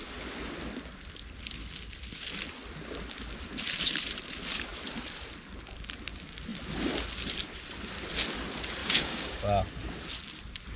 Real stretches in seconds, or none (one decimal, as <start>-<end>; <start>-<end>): 0.0-8.8; 9.4-10.8